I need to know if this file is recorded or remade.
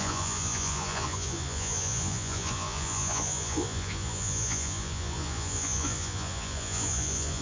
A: remade